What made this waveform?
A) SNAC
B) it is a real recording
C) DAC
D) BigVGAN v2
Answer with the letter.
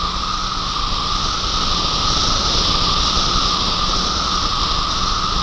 B